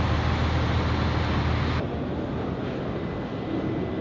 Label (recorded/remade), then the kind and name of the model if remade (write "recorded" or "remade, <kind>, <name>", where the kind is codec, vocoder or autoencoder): recorded